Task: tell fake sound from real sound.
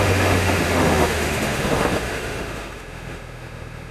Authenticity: fake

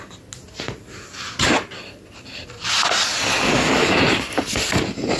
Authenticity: real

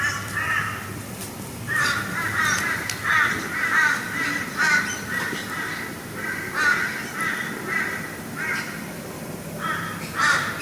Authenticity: real